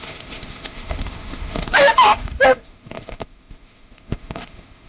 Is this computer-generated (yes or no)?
yes